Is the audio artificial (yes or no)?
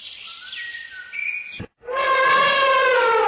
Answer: no